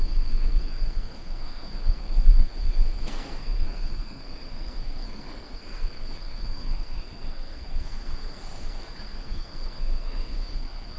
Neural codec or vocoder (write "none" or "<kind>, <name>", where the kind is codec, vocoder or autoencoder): codec, SNAC